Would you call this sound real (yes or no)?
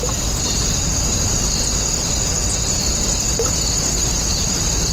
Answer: no